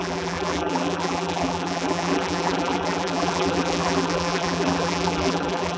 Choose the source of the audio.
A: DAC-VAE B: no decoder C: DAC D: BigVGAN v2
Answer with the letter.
D